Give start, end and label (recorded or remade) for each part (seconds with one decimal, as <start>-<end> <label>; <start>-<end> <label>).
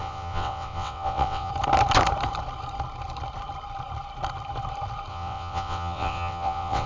0.0-1.5 remade; 1.5-5.1 recorded; 5.1-6.9 remade